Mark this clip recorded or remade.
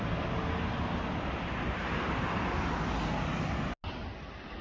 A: recorded